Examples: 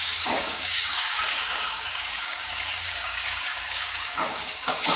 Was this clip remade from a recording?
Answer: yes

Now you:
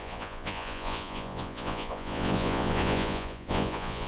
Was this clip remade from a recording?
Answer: yes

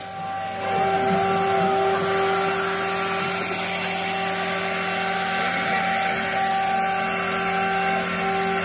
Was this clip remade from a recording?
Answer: no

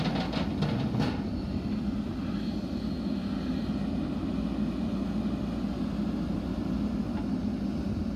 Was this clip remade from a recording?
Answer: no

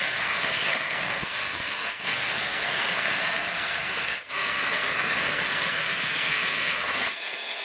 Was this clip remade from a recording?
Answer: yes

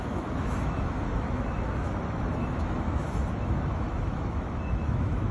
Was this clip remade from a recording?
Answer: yes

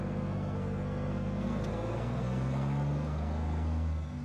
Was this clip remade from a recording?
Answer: yes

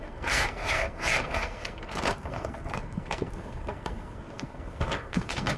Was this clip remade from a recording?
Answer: yes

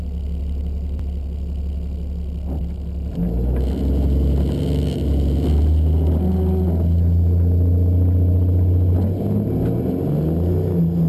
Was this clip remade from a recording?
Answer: no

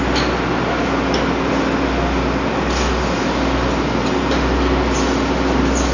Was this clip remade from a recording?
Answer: no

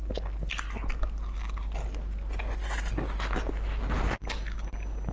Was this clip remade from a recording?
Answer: no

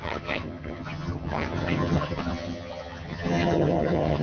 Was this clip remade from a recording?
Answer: yes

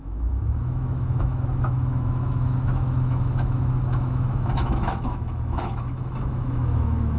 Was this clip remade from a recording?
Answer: yes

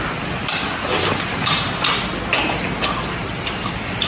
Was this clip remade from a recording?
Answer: no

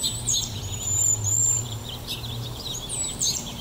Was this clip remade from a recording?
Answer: yes